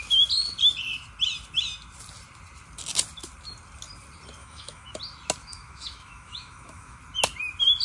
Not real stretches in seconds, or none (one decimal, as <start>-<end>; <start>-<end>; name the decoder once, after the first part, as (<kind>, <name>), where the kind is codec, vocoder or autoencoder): 4.4-5.0 (autoencoder, DAC-VAE); 5.4-7.0